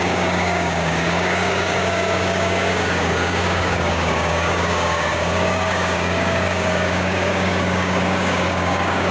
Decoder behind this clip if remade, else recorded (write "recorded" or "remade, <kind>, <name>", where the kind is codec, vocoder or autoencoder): remade, codec, DAC